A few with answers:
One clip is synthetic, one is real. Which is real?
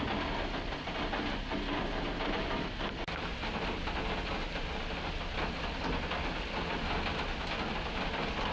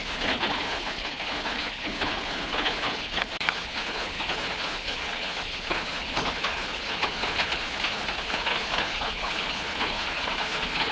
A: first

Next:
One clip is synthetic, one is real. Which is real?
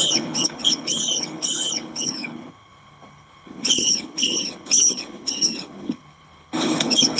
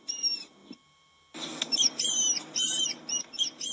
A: second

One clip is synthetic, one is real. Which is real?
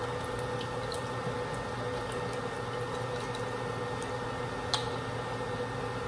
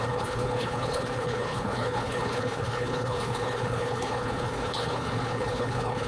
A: first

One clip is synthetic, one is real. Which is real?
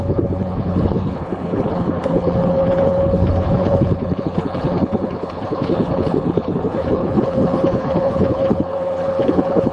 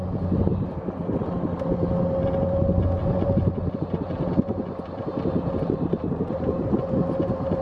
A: second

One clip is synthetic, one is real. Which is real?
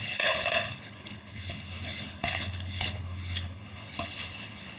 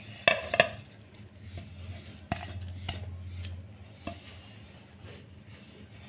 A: second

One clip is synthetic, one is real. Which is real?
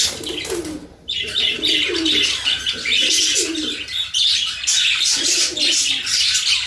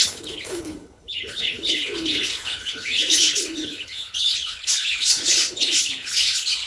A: first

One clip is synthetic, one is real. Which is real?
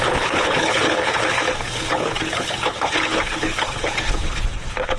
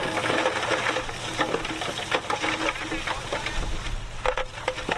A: second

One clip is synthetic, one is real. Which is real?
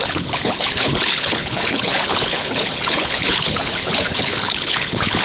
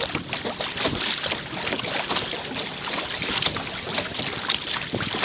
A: second